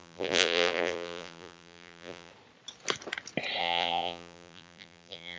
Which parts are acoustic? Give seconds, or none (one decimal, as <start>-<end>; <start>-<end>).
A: 2.3-3.6